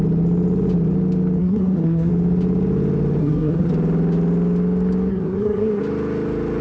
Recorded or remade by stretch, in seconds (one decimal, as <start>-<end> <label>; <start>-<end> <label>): 0.0-1.4 recorded; 1.4-2.1 remade; 2.1-3.2 recorded; 3.2-3.7 remade; 3.7-5.1 recorded; 5.1-5.8 remade; 5.8-6.6 recorded